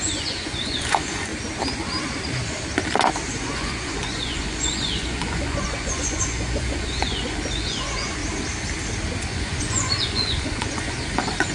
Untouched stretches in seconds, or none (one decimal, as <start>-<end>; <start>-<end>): 1.3-3.3; 8.2-9.2